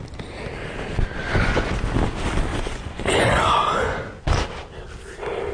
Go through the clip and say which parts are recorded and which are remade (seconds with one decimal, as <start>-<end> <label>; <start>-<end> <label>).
0.0-1.2 recorded; 1.2-1.7 remade; 1.7-2.5 recorded; 2.5-4.2 remade; 4.2-5.5 recorded